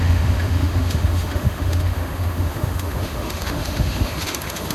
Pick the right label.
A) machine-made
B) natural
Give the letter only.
A